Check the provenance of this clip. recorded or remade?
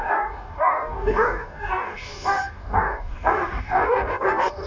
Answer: remade